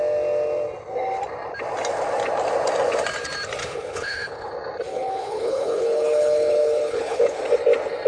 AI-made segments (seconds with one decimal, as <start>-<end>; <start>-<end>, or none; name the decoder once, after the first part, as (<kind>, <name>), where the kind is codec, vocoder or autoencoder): 3.6-4.5 (codec, HILCodec); 4.9-7.4